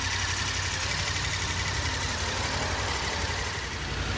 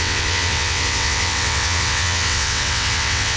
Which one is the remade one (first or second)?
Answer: second